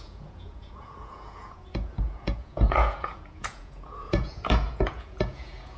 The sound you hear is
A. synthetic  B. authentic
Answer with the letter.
A